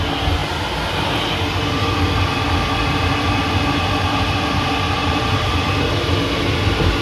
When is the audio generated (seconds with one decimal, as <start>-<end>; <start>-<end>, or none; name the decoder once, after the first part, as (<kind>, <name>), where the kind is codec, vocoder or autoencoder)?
5.0-5.5 (vocoder, BigVGAN v2)